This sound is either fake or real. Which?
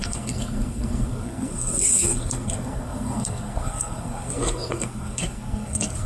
fake